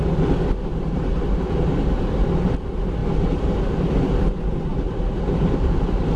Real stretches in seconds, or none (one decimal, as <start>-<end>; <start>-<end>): 0.0-3.0; 3.6-4.7